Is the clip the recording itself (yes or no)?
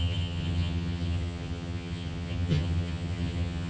no